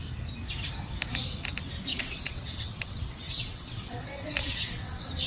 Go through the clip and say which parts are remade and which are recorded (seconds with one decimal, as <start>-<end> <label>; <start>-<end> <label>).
0.0-1.9 recorded; 1.9-5.3 remade